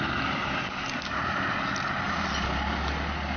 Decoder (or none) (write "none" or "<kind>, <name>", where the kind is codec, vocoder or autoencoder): none